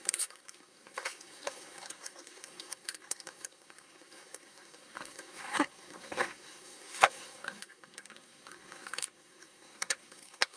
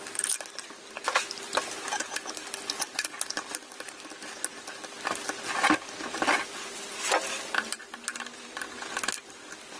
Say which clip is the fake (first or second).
first